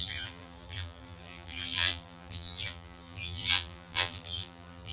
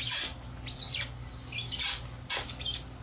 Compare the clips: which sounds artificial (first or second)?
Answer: first